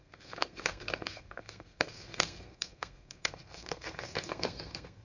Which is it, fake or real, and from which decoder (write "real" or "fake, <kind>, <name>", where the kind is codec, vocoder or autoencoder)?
fake, codec, SNAC